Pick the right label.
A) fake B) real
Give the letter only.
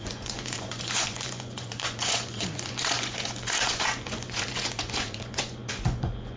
A